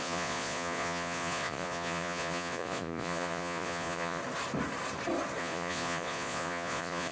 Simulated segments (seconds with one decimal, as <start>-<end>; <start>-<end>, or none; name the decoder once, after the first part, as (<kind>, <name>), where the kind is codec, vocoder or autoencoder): 0.0-4.2 (vocoder, Vocos); 5.4-7.1